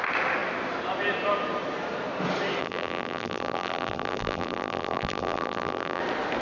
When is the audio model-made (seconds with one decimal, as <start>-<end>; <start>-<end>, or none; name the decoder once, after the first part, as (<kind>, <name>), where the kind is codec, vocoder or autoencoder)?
2.6-6.0 (vocoder, BigVGAN v2)